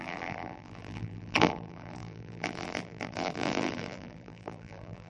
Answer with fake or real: fake